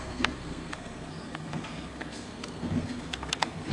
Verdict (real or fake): fake